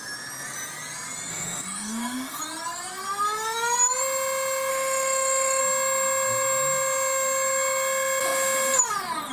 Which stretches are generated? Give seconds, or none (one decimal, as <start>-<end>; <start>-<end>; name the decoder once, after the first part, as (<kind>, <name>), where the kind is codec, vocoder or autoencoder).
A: 1.3-2.4 (autoencoder, DAC-VAE); 4.7-5.6